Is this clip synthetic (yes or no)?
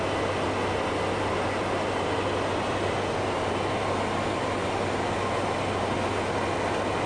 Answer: no